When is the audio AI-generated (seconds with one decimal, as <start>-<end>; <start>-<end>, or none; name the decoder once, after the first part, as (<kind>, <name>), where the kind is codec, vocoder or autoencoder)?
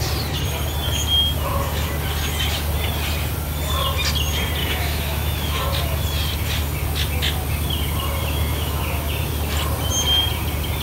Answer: 4.6-5.6 (autoencoder, DAC-VAE); 8.2-8.8